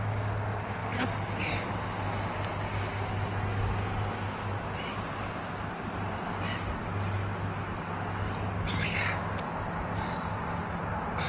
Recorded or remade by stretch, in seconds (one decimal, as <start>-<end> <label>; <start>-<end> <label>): 0.0-11.3 recorded